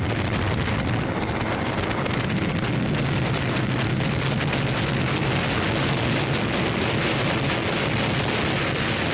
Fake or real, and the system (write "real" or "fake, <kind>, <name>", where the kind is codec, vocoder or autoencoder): real